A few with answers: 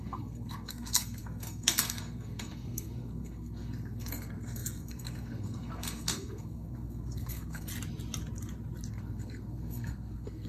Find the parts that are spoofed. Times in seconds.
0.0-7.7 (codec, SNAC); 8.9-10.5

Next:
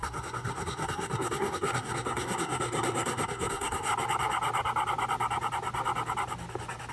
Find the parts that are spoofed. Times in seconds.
0.0-3.9 (codec, SNAC)

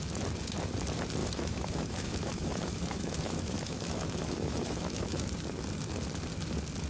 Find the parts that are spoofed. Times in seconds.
1.2-5.3 (autoencoder, DAC-VAE)

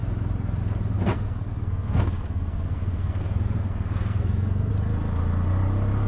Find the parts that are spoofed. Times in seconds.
1.0-4.7 (codec, SNAC)

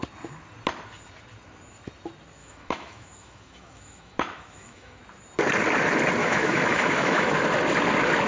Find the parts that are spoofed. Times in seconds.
2.4-5.0 (autoencoder, DAC-VAE); 6.2-7.3

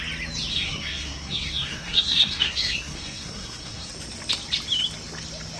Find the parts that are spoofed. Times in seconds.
0.5-3.9 (codec, SNAC)

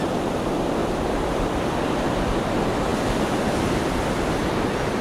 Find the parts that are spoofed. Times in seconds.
none